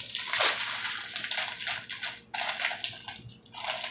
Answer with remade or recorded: recorded